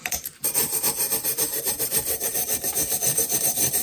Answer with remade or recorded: remade